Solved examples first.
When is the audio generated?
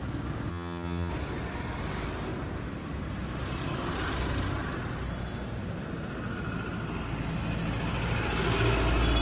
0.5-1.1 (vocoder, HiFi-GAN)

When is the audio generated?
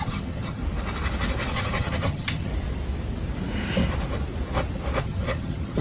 0.0-0.6 (vocoder, HiFi-GAN); 1.5-2.5; 5.0-5.8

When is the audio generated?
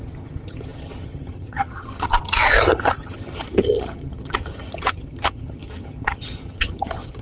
0.0-7.2 (vocoder, HiFi-GAN)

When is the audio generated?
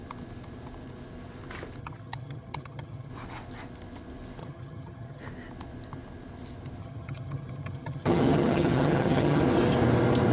1.8-3.1 (vocoder, HiFi-GAN); 4.4-5.2; 6.8-9.4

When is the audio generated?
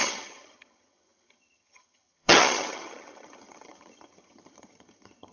0.0-5.3 (vocoder, HiFi-GAN)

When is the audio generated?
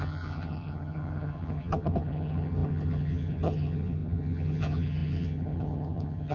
0.0-6.3 (vocoder, HiFi-GAN)